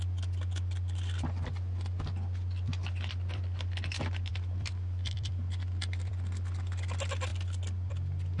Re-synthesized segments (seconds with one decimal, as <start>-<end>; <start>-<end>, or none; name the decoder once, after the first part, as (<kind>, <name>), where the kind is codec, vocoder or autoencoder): 4.3-6.1 (vocoder, BigVGAN v2)